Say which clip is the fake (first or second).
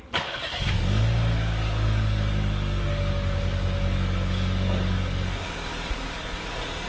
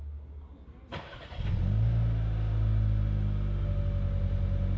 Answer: first